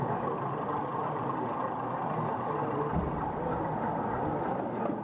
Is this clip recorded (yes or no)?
yes